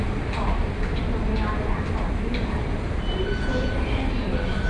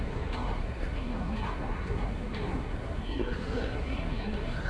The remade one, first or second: second